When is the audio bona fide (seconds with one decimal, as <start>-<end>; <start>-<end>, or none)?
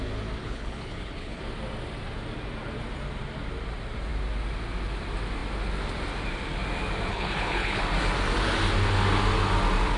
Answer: 0.0-0.4; 1.4-7.1; 7.8-10.0